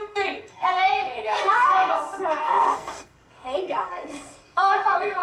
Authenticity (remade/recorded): remade